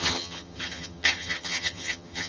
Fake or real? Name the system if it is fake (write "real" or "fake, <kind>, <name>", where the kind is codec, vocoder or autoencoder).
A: fake, vocoder, HiFi-GAN